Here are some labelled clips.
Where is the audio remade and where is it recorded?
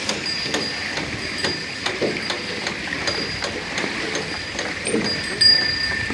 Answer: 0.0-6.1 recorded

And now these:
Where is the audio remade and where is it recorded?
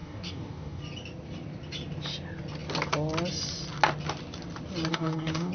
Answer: 0.0-0.8 remade; 0.8-4.9 recorded; 4.9-5.5 remade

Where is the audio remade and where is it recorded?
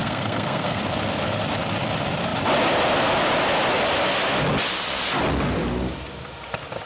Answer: 0.0-0.8 remade; 0.8-6.9 recorded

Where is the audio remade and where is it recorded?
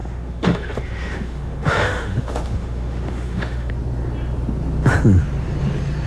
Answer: 0.0-3.7 remade; 3.7-6.1 recorded